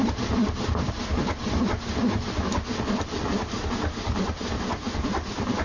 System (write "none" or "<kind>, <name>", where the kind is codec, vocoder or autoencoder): none